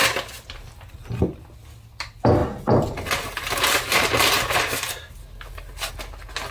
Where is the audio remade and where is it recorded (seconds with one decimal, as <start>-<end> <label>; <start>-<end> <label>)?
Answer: 0.0-6.5 recorded